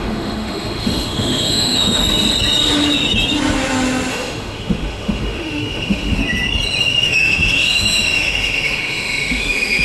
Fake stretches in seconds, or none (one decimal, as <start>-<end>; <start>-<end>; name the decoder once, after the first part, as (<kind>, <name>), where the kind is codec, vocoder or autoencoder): 0.0-2.0 (autoencoder, DAC-VAE); 4.1-6.2; 6.8-9.8